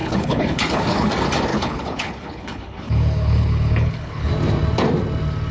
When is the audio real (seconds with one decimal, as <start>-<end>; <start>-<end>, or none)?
1.1-1.5; 4.3-5.5